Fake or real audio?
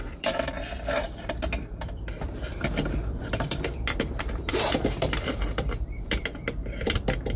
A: fake